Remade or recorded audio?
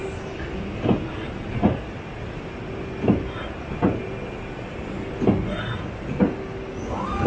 recorded